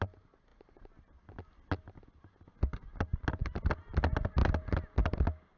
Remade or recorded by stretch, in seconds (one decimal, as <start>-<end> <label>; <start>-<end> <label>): 0.0-5.6 recorded